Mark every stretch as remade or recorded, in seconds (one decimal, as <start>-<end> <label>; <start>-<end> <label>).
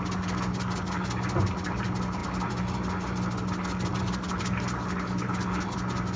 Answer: 0.0-6.2 recorded